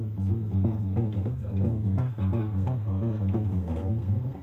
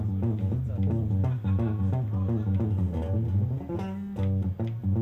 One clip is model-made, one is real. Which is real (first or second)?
second